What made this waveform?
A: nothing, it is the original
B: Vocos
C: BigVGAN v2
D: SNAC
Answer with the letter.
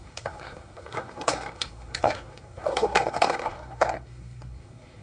D